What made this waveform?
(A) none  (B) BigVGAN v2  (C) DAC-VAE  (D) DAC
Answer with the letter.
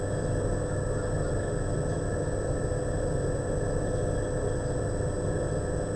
A